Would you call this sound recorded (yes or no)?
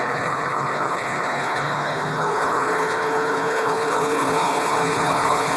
no